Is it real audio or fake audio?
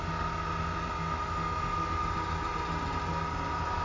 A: real